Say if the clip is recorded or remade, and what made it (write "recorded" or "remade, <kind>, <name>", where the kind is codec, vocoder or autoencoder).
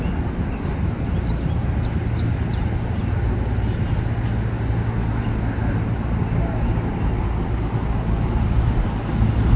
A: recorded